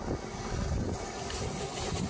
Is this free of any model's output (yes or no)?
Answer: yes